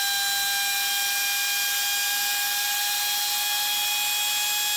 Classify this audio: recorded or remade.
recorded